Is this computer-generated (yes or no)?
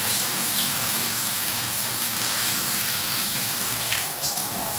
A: yes